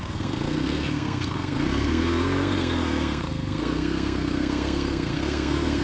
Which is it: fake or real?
fake